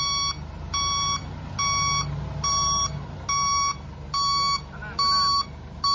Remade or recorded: recorded